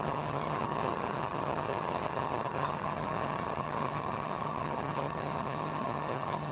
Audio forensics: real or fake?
fake